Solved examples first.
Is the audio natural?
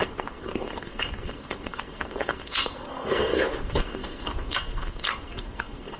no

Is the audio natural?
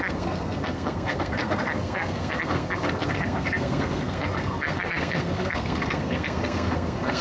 no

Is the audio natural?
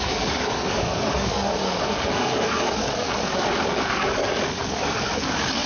no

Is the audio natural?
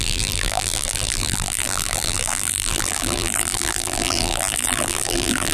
no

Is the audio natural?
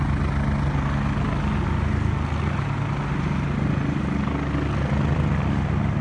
yes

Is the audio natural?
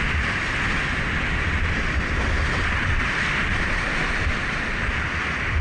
yes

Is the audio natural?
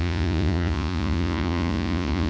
no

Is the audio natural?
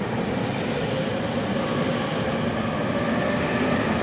yes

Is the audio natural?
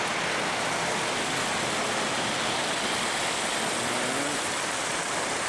yes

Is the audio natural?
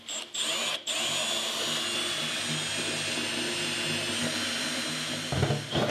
yes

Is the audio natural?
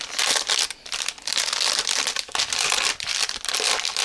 yes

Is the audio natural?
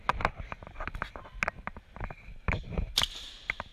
yes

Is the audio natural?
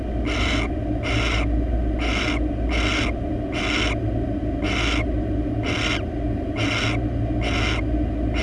yes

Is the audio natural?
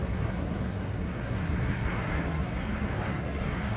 no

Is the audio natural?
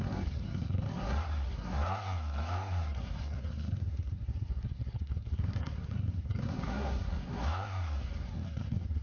no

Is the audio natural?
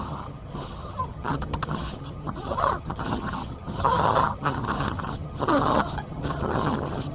no